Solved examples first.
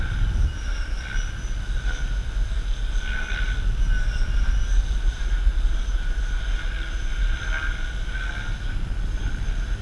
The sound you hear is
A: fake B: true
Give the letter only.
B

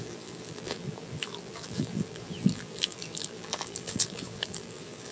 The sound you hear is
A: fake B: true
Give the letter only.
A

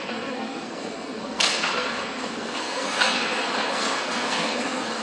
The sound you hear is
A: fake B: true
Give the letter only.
A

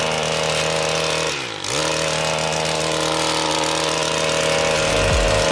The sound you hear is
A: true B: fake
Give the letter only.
A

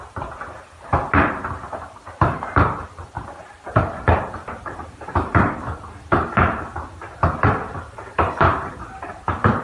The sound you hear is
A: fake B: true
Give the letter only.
A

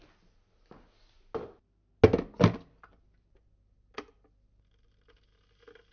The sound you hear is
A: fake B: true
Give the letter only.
B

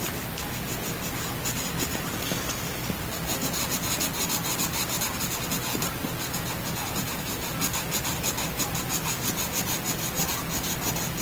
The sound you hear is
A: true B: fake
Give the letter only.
A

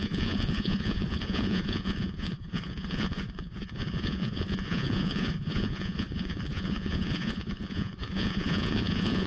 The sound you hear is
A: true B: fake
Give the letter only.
B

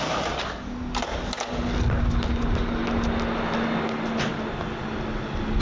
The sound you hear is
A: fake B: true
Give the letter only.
B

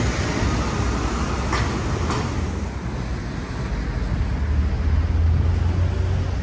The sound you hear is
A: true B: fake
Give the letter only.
A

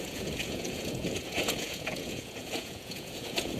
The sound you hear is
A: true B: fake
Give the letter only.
B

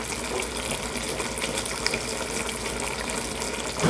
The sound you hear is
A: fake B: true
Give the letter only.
B